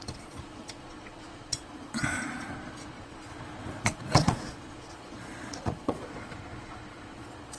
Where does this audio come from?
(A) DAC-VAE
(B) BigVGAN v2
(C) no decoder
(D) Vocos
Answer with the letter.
D